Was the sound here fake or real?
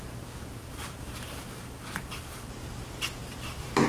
fake